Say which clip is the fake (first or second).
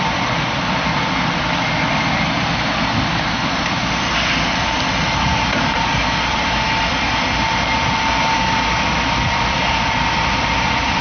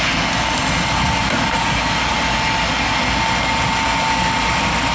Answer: first